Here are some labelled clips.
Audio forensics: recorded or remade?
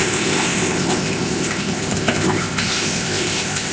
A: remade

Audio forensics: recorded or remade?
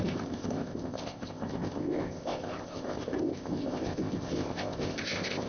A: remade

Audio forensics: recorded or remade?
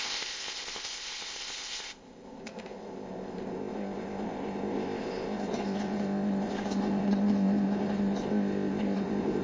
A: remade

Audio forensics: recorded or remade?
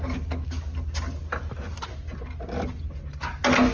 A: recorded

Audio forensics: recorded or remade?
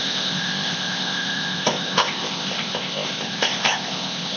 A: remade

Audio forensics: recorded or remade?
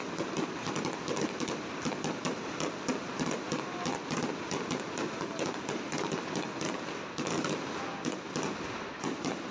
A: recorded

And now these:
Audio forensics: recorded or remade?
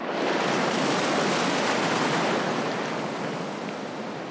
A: recorded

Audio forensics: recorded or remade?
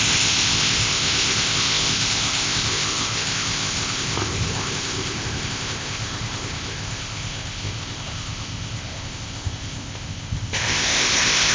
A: remade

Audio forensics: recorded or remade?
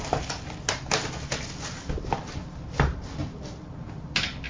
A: recorded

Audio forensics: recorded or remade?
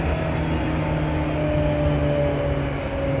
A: recorded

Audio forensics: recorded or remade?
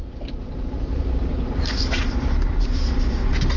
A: recorded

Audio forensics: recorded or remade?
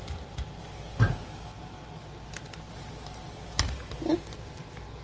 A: recorded